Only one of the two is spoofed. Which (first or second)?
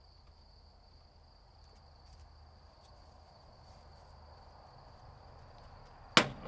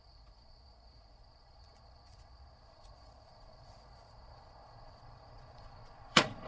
second